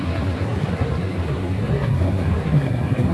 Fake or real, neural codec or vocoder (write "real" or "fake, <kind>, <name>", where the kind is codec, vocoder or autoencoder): fake, codec, SNAC